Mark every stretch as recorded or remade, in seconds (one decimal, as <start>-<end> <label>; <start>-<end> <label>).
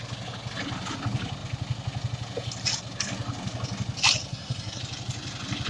0.0-4.3 recorded; 4.3-4.8 remade; 4.8-5.7 recorded